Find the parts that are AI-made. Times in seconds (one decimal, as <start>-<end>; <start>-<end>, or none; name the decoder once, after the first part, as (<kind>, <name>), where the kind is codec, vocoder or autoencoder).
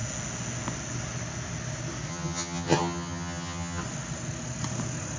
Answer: 2.1-3.8 (vocoder, HiFi-GAN)